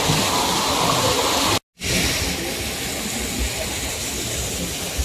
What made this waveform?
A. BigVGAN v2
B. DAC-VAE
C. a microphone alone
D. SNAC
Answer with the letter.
C